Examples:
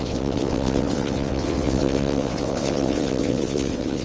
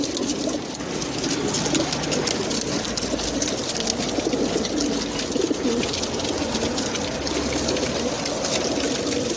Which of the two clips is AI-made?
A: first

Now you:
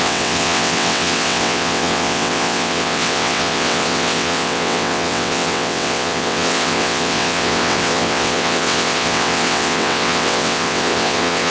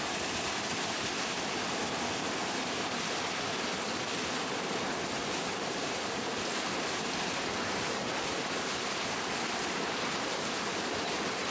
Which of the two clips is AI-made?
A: first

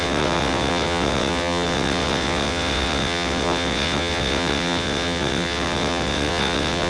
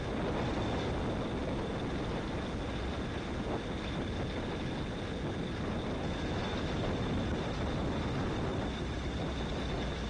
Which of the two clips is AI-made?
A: first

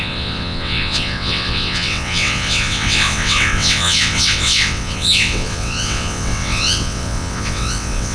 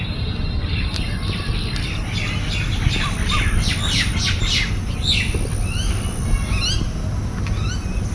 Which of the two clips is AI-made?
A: first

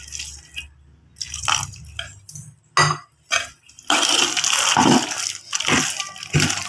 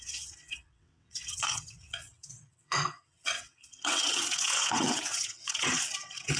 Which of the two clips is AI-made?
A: second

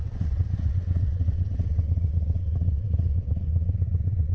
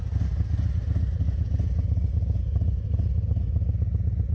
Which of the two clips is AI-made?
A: first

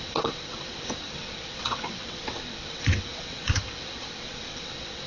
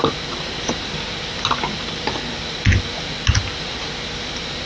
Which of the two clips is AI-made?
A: first